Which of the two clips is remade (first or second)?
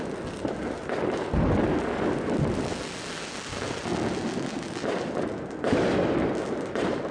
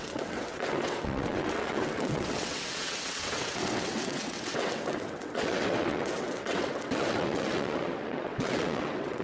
second